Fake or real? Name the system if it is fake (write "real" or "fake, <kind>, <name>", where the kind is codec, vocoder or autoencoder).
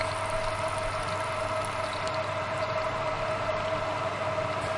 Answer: real